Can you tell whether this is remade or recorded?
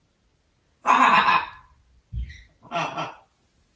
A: recorded